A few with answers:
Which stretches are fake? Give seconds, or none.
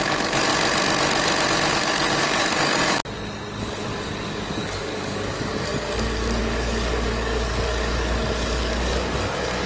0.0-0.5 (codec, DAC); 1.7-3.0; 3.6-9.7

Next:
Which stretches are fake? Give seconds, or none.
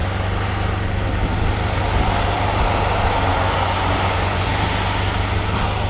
3.3-4.5 (vocoder, Vocos)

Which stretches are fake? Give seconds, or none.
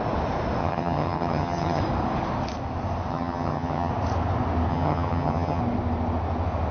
0.6-1.8 (vocoder, HiFi-GAN); 3.1-3.9; 4.7-5.6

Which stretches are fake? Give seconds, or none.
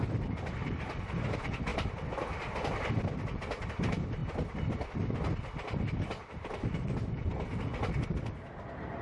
none